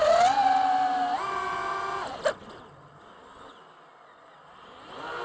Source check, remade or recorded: recorded